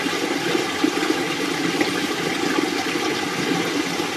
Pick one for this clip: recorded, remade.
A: recorded